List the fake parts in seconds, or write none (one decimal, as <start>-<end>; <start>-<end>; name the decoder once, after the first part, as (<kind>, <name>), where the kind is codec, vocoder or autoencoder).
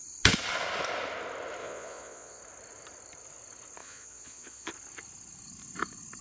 1.6-2.4 (vocoder, Vocos); 3.8-4.7